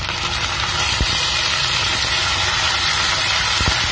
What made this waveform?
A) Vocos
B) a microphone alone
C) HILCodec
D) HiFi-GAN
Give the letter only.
B